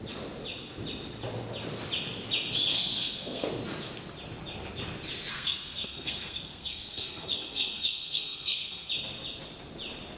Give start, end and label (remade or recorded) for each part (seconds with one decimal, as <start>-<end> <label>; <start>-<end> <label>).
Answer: 0.0-2.7 recorded; 2.7-3.5 remade; 3.5-5.3 recorded; 5.3-8.9 remade; 8.9-10.2 recorded